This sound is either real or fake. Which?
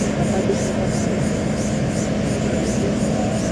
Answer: real